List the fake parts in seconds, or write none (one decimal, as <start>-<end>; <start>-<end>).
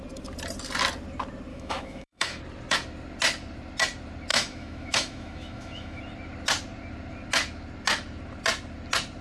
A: 1.5-2.4; 4.3-6.0